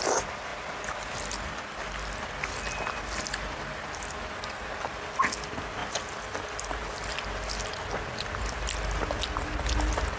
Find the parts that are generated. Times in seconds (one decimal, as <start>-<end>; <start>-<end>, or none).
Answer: none